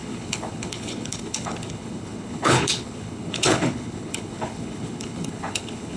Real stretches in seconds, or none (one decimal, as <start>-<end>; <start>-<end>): none